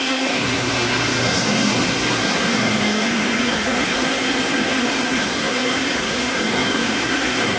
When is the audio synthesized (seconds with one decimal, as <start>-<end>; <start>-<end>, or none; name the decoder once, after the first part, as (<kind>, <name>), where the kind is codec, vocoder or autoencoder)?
0.0-7.6 (codec, SNAC)